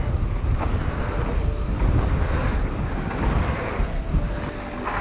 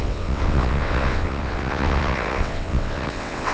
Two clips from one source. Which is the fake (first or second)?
second